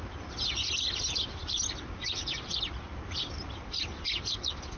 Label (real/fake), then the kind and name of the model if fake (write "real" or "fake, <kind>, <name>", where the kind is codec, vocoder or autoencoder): real